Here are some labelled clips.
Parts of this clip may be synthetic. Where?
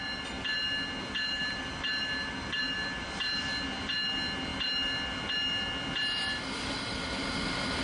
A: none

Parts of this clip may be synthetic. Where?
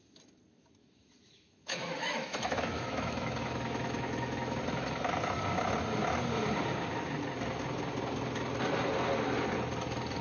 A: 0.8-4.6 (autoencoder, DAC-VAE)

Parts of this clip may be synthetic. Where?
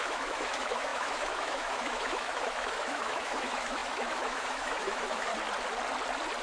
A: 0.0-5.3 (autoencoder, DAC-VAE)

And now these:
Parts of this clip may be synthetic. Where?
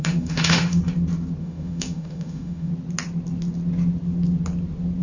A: 0.0-0.8 (autoencoder, DAC-VAE); 1.4-2.7